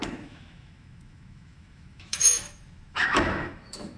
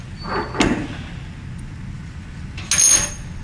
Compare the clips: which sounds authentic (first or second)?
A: second